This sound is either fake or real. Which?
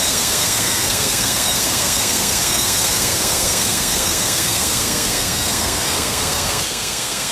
fake